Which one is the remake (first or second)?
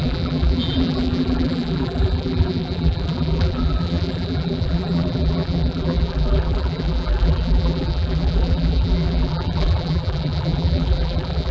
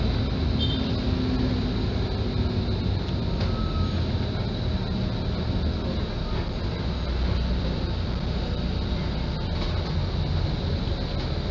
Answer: first